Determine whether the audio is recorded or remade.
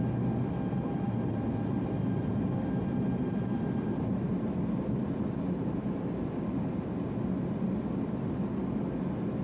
recorded